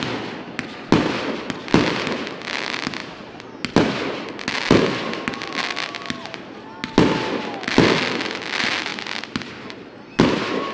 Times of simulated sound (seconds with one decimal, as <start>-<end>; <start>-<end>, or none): none